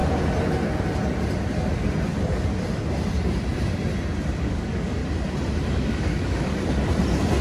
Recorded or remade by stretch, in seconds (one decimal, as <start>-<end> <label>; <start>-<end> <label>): 0.0-4.4 recorded; 4.4-5.0 remade; 5.0-5.7 recorded; 5.7-6.5 remade; 6.5-7.4 recorded